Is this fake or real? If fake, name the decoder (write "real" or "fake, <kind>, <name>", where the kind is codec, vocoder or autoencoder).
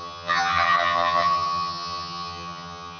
fake, vocoder, HiFi-GAN